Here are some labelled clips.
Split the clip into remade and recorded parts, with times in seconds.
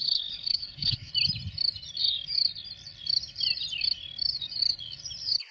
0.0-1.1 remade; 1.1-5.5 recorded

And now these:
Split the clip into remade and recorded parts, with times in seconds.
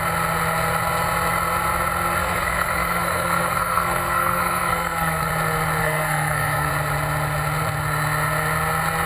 0.0-2.2 recorded; 2.2-5.3 remade; 5.3-5.8 recorded; 5.8-6.7 remade; 6.7-9.1 recorded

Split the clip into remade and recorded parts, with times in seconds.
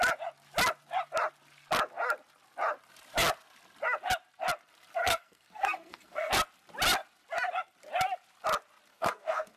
0.0-5.0 recorded; 5.0-6.3 remade; 6.3-8.9 recorded; 8.9-9.6 remade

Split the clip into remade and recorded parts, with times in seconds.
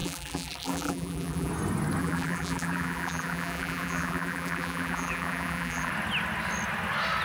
0.0-1.5 remade; 1.5-2.0 recorded; 2.0-5.9 remade; 5.9-7.2 recorded